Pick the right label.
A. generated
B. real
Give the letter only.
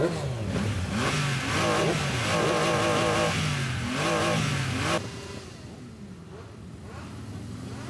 B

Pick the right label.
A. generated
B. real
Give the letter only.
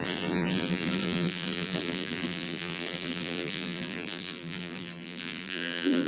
A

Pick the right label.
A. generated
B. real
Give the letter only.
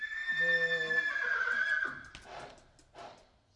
B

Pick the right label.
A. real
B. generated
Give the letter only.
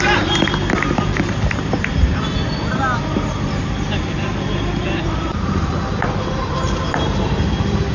B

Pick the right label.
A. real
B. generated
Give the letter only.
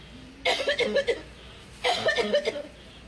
A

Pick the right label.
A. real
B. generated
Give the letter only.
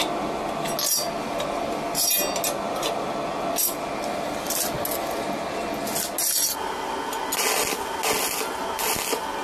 A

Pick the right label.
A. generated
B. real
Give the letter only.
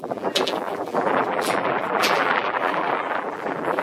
A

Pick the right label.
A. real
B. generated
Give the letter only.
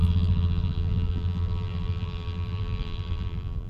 B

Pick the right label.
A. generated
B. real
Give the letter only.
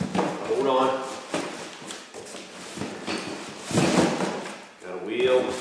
B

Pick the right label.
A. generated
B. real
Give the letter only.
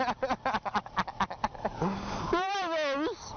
B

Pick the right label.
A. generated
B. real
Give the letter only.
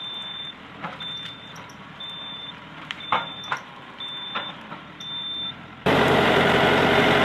A